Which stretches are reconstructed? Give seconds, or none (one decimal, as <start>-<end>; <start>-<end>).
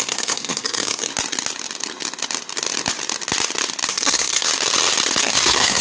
0.0-1.1; 3.9-4.5; 5.2-5.8